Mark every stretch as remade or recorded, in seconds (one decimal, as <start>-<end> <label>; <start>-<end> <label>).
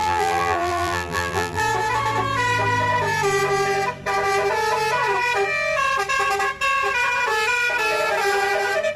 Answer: 0.0-1.6 remade; 1.6-9.0 recorded